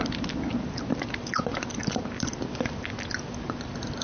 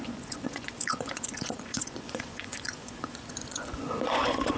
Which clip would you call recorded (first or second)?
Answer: first